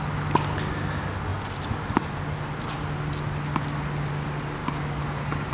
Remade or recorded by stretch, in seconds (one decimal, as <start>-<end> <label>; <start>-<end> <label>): 0.0-4.6 recorded; 4.6-5.5 remade

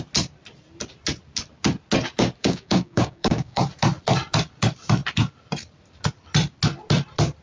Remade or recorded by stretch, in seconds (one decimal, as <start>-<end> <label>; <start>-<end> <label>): 0.0-2.4 recorded; 2.4-3.6 remade; 3.6-7.4 recorded

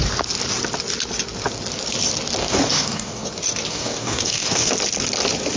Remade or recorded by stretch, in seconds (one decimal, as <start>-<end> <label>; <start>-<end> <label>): 0.0-2.4 recorded; 2.4-3.3 remade; 3.3-3.7 recorded; 3.7-4.7 remade; 4.7-5.6 recorded

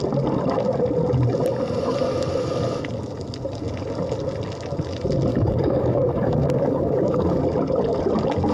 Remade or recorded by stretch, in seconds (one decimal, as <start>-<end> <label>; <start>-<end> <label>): 0.0-5.3 recorded; 5.3-7.4 remade; 7.4-8.5 recorded

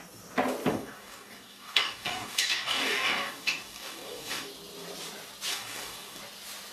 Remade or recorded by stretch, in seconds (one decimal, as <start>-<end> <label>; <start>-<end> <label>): 0.0-0.7 recorded; 0.7-4.5 remade; 4.5-5.5 recorded; 5.5-6.2 remade; 6.2-6.7 recorded